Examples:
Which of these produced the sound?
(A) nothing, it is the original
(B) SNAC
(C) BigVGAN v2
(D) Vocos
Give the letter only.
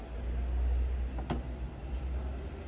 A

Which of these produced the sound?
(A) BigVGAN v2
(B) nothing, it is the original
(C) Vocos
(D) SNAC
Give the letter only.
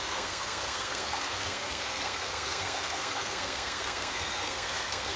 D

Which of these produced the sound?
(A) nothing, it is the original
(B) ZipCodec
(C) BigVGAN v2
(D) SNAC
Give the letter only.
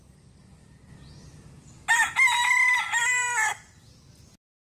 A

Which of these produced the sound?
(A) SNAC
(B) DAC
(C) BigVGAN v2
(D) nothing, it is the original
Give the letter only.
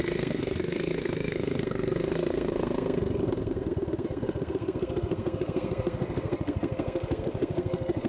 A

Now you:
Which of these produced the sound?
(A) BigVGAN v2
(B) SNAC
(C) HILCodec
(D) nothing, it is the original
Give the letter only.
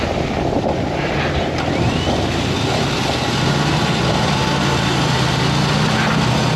D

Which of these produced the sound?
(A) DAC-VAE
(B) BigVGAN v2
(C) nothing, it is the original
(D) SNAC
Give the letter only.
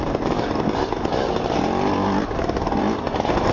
C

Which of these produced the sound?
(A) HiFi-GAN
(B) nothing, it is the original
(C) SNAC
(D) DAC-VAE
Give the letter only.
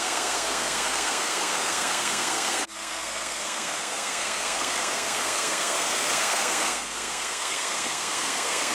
C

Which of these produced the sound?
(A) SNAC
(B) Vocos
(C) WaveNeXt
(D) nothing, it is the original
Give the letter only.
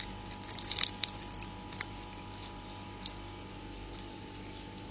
D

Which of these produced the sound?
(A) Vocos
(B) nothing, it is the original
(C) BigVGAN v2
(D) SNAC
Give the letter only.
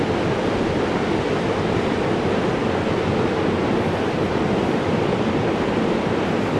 B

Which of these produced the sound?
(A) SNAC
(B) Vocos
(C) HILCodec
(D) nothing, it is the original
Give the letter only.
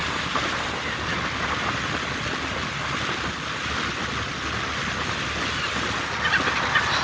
D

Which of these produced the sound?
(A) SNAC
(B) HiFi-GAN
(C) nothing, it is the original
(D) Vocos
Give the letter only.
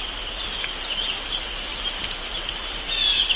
C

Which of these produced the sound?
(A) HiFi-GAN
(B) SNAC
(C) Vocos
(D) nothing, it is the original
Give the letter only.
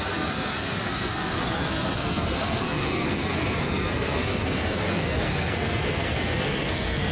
B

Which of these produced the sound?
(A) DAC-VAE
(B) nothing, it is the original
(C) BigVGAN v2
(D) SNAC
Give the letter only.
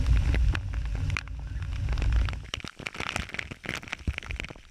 B